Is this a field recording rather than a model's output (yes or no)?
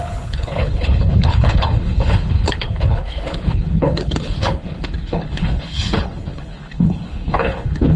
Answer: no